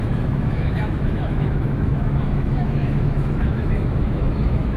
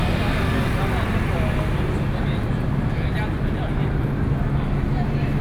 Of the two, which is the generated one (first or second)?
first